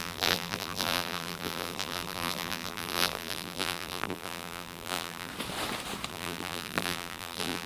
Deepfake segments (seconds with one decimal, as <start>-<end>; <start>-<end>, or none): 0.0-5.3; 6.1-7.7

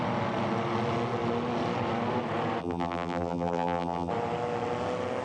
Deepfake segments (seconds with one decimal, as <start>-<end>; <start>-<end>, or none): 2.6-4.1

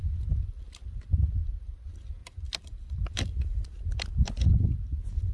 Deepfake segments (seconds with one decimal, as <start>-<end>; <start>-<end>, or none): 2.2-4.3

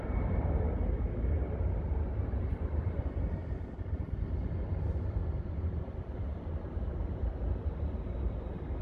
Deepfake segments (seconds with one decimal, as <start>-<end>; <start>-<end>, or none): none

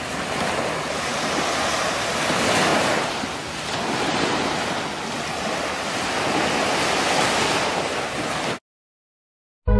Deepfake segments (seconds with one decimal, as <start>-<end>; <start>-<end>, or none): 2.7-3.2

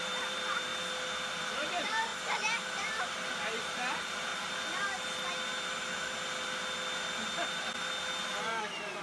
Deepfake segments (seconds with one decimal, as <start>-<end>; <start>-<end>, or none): 0.0-0.7; 1.3-2.1; 3.3-4.3; 8.6-9.0

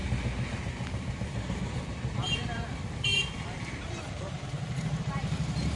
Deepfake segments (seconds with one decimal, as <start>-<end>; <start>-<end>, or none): 0.0-5.8